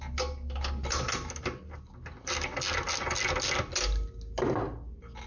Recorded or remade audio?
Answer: recorded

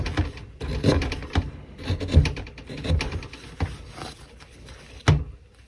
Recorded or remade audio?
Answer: recorded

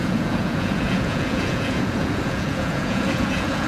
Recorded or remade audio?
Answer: remade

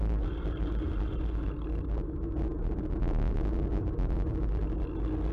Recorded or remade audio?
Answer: recorded